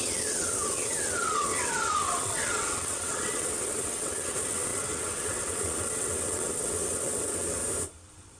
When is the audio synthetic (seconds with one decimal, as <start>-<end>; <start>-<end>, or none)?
0.0-7.6